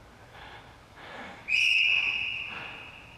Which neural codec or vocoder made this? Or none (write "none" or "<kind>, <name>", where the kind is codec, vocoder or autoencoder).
none